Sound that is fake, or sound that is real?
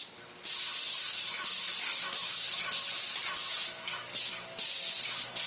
real